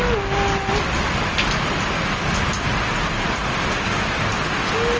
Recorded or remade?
recorded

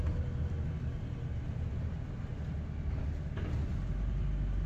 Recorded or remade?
recorded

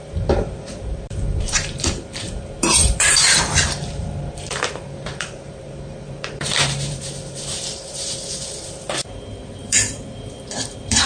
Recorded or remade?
remade